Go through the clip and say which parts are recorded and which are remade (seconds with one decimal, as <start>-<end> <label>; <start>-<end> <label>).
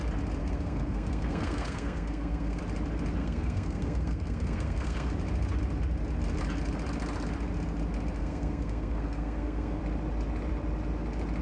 0.0-0.4 recorded; 0.4-2.6 remade; 2.6-3.2 recorded; 3.2-5.1 remade; 5.1-8.2 recorded; 8.2-9.8 remade; 9.8-11.4 recorded